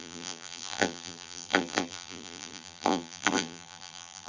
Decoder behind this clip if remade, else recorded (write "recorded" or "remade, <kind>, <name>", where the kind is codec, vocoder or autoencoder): remade, vocoder, BigVGAN v2